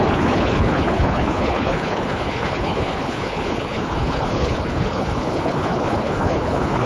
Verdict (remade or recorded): remade